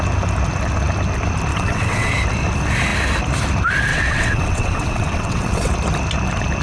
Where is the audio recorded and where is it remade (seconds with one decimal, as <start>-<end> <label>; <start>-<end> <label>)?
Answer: 0.0-1.5 recorded; 1.5-2.1 remade; 2.1-3.9 recorded; 3.9-5.7 remade; 5.7-6.6 recorded